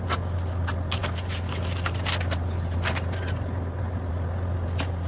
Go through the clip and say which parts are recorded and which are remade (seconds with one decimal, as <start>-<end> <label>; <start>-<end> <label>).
0.0-5.1 recorded